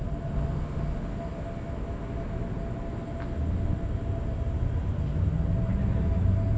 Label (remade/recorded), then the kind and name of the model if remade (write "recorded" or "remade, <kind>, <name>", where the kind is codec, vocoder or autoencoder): recorded